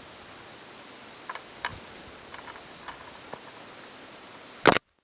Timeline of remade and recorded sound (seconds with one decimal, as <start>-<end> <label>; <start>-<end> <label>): 0.0-5.0 recorded

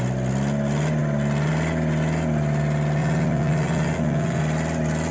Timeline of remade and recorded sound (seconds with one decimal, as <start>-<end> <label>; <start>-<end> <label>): 0.0-3.0 recorded; 3.0-4.4 remade; 4.4-5.1 recorded

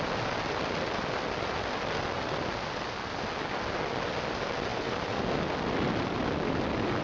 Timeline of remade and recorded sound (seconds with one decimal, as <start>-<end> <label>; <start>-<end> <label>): 0.0-7.0 recorded

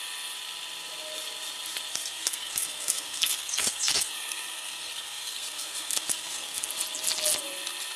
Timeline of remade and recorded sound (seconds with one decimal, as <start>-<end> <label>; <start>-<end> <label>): 0.0-1.9 recorded; 1.9-6.7 remade; 6.7-8.0 recorded